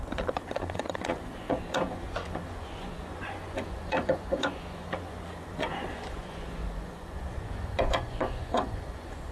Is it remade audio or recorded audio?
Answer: remade